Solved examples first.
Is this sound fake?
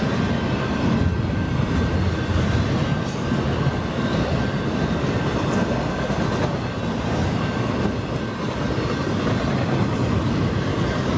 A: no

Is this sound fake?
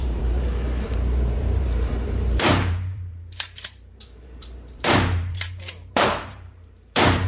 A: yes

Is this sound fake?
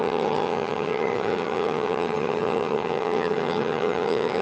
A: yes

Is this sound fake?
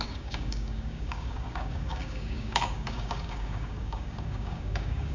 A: yes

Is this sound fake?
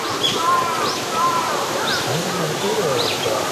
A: no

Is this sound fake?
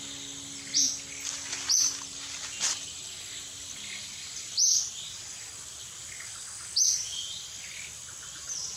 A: no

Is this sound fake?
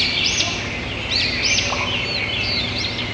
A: no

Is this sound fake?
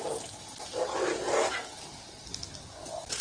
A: no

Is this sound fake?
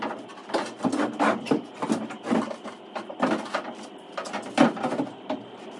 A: no